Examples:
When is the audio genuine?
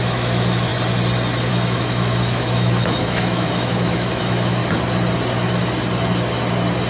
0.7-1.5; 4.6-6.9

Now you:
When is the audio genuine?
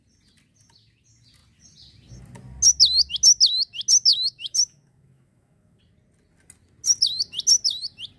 0.0-4.1; 5.8-8.2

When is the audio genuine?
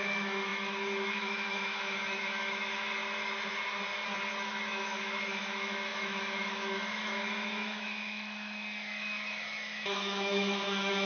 3.0-4.6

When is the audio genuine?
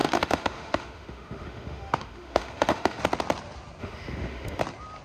3.0-3.8; 4.6-5.0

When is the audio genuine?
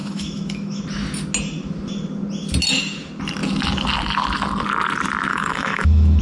0.8-5.3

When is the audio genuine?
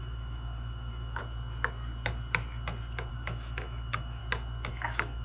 1.2-3.1; 4.2-4.7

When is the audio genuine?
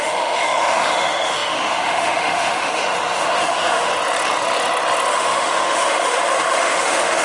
3.9-5.1